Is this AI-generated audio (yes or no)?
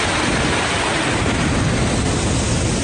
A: no